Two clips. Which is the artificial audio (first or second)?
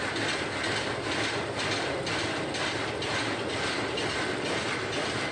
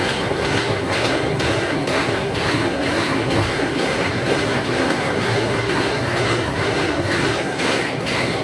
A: second